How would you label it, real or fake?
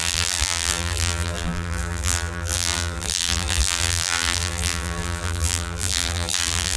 fake